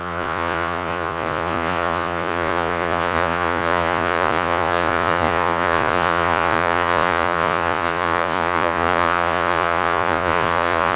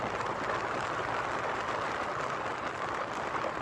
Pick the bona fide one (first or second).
second